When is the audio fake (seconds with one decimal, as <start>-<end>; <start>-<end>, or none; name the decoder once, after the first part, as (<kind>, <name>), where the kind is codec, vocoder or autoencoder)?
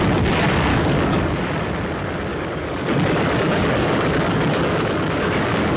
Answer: 0.7-1.3 (codec, DAC); 2.3-5.8